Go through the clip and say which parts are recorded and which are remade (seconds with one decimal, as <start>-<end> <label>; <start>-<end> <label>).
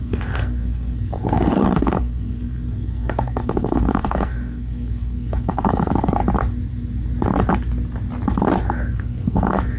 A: 0.0-6.2 remade; 6.2-8.9 recorded; 8.9-9.8 remade